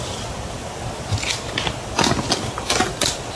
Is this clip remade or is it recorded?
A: recorded